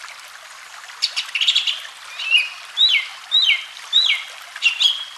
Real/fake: real